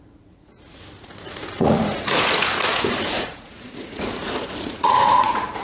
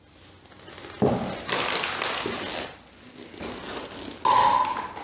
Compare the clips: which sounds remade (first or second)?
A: first